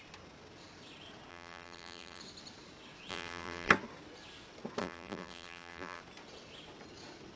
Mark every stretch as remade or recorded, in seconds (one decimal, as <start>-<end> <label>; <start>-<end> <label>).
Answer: 0.0-1.3 recorded; 1.3-2.2 remade; 2.2-3.1 recorded; 3.1-3.7 remade; 3.7-4.8 recorded; 4.8-6.0 remade; 6.0-7.4 recorded